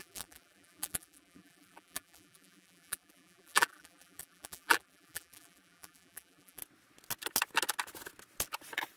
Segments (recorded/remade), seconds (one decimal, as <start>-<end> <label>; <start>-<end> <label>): 0.0-6.6 remade; 6.6-9.0 recorded